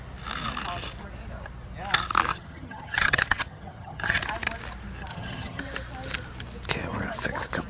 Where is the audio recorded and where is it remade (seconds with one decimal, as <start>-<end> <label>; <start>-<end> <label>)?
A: 0.0-2.3 recorded; 2.3-4.2 remade; 4.2-5.1 recorded; 5.1-5.6 remade; 5.6-7.7 recorded